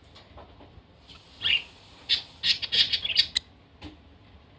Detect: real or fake real